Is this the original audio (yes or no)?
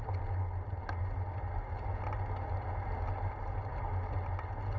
yes